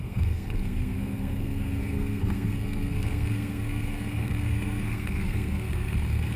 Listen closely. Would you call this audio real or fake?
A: fake